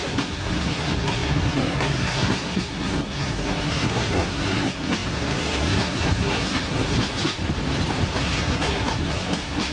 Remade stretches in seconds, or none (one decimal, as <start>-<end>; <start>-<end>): 0.0-7.4; 8.2-9.7

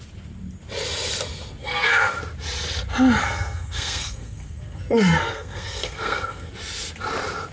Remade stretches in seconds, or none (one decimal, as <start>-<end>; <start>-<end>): 1.6-2.2; 3.2-6.5